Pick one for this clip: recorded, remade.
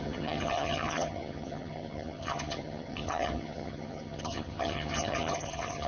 remade